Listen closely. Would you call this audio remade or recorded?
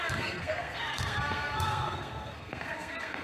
remade